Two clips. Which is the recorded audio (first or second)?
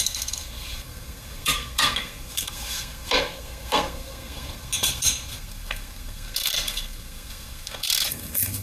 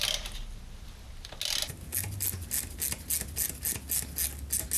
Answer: second